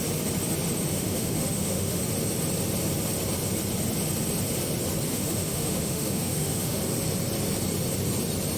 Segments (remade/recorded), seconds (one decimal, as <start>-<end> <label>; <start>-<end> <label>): 0.0-0.9 recorded; 0.9-2.0 remade; 2.0-5.1 recorded; 5.1-6.8 remade; 6.8-8.6 recorded